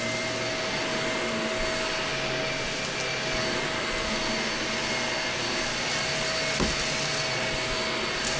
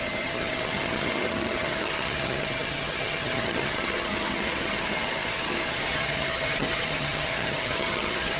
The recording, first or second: first